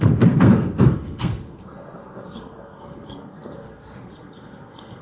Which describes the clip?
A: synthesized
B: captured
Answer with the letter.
A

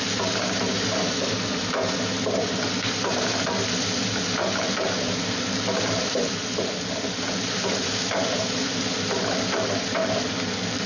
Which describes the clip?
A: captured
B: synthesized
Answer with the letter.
A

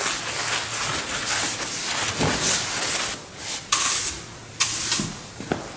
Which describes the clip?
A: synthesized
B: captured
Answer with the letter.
B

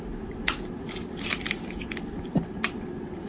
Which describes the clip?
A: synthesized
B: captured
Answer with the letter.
B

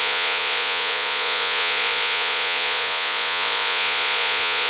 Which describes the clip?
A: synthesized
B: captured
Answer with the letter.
A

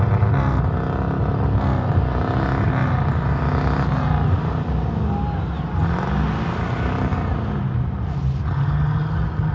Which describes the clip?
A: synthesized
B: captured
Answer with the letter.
B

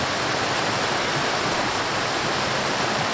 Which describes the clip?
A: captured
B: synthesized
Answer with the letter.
A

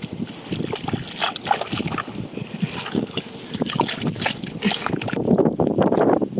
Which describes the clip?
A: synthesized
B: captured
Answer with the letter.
B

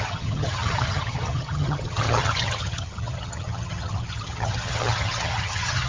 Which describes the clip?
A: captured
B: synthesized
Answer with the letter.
B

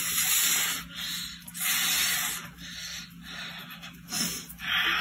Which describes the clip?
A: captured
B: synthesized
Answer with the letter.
A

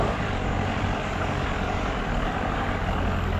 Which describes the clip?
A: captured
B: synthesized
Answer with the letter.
B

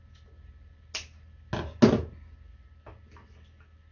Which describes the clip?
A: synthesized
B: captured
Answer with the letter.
B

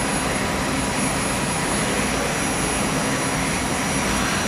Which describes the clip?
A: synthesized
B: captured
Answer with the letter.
B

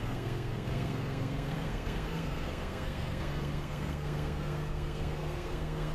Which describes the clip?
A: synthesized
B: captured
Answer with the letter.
A